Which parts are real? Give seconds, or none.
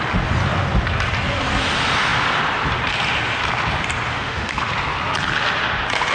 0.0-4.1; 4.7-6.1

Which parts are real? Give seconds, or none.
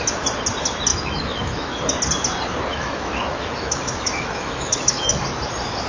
0.0-0.9; 1.8-2.7; 5.2-5.9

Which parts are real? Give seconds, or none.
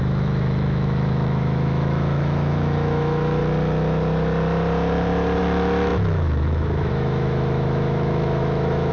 3.4-5.4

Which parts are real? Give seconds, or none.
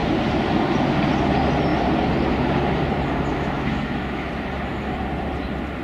0.0-3.3; 4.3-5.8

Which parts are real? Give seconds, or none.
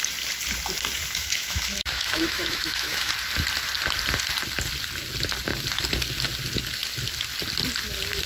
0.0-1.2; 3.1-8.3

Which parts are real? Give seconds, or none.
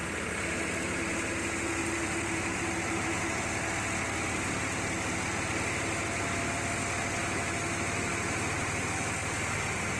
0.0-7.2; 8.1-10.0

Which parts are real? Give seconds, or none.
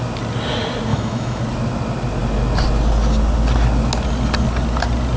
0.0-0.9; 1.4-5.2